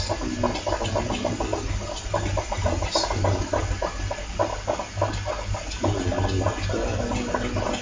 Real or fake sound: real